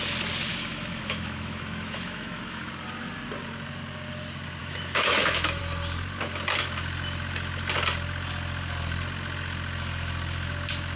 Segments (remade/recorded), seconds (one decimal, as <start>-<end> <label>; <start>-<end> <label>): 0.0-0.5 recorded; 0.5-2.7 remade; 2.7-4.6 recorded; 4.6-5.6 remade; 5.6-11.0 recorded